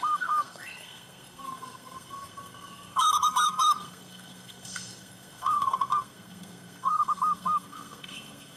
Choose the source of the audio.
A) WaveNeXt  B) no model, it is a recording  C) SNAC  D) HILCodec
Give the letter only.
C